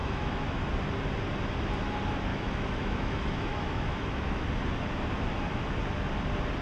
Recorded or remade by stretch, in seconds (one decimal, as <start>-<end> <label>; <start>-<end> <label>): 0.0-0.7 remade; 0.7-2.3 recorded; 2.3-4.4 remade; 4.4-6.6 recorded